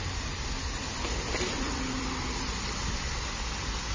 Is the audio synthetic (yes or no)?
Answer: no